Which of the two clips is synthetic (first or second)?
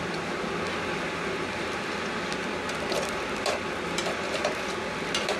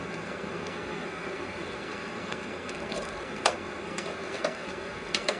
second